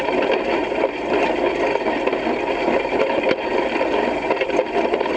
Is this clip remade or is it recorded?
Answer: remade